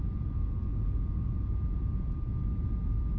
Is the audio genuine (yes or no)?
no